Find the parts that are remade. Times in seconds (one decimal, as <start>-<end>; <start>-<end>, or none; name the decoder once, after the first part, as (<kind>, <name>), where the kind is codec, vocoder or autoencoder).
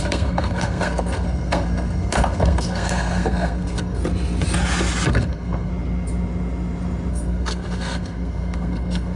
0.0-4.0 (codec, SNAC); 5.1-5.7; 7.1-9.2